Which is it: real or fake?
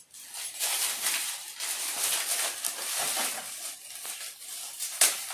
real